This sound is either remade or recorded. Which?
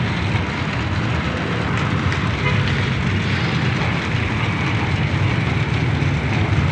recorded